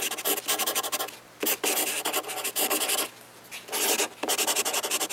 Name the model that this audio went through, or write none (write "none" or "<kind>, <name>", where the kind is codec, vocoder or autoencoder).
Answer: none